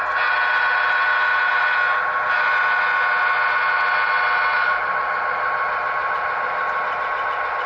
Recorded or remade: recorded